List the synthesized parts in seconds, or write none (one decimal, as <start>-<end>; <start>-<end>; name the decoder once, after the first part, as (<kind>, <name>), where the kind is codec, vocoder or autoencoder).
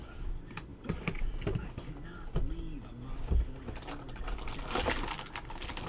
none